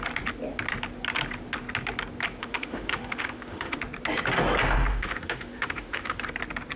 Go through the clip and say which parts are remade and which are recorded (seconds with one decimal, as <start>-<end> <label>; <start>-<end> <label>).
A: 0.0-2.4 recorded; 2.4-3.8 remade; 3.8-4.9 recorded; 4.9-6.2 remade; 6.2-6.8 recorded